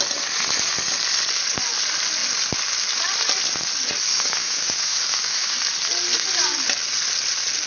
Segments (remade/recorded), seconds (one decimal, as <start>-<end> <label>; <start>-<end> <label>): 0.0-4.1 recorded; 4.1-5.6 remade; 5.6-7.7 recorded